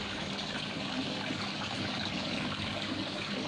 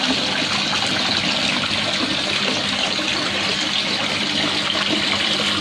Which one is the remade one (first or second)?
first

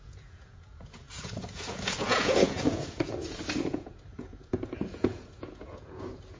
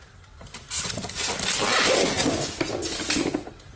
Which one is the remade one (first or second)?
first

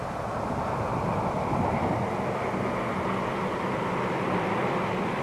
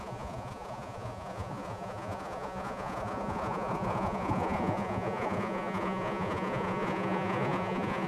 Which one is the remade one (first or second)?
second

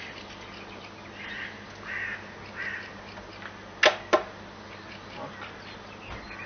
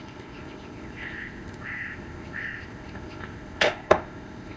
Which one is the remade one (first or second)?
second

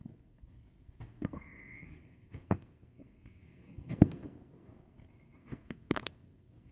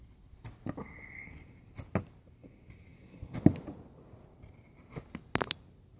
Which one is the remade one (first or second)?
first